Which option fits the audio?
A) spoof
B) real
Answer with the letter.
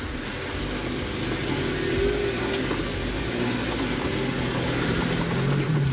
B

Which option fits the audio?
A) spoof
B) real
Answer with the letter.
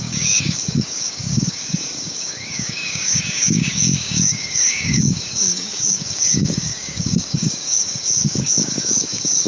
A